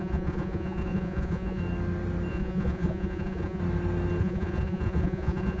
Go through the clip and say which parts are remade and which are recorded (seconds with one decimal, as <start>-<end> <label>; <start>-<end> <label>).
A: 0.0-1.6 remade; 1.6-2.3 recorded; 2.3-3.6 remade; 3.6-4.2 recorded; 4.2-5.6 remade